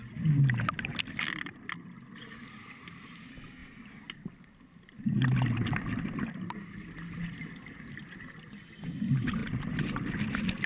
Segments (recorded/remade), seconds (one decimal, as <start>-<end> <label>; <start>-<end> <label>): 0.0-10.7 recorded